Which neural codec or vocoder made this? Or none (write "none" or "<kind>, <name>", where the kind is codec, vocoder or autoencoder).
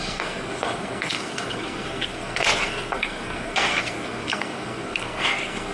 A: codec, SNAC